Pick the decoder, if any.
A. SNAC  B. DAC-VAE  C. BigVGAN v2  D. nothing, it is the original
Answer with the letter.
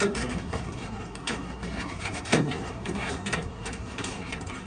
A